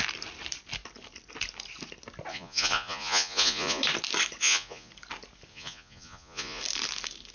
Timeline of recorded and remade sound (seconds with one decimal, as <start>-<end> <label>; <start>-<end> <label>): 0.0-2.3 recorded; 2.3-3.8 remade; 3.8-4.4 recorded; 4.4-4.9 remade; 4.9-5.5 recorded; 5.5-6.6 remade; 6.6-7.3 recorded